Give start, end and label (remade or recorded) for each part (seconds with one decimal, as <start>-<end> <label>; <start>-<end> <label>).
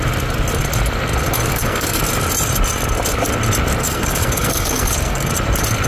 0.0-1.5 recorded; 1.5-2.0 remade; 2.0-3.8 recorded; 3.8-5.3 remade; 5.3-5.9 recorded